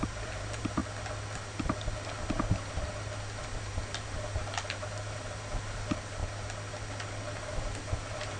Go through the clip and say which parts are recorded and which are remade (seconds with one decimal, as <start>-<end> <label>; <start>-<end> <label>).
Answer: 0.0-0.8 remade; 0.8-3.4 recorded; 3.4-6.2 remade; 6.2-7.4 recorded; 7.4-8.4 remade